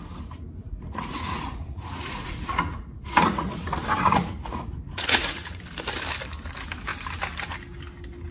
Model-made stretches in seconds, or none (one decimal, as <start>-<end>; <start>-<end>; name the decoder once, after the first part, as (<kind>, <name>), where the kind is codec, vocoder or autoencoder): 0.6-5.6 (vocoder, Vocos)